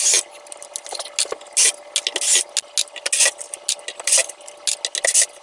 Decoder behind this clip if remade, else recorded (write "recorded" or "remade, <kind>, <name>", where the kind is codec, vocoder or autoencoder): recorded